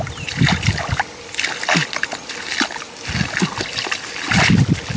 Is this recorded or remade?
recorded